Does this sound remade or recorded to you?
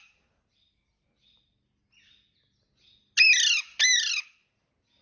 recorded